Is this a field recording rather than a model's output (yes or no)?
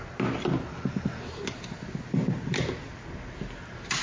yes